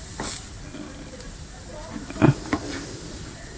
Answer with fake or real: real